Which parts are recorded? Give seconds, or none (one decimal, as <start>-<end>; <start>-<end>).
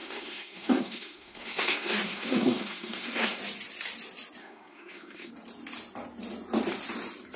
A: 3.4-4.4; 5.3-7.4